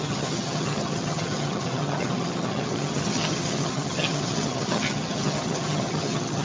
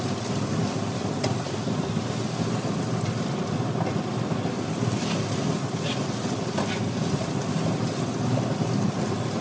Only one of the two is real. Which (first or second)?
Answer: second